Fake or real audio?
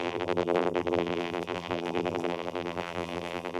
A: fake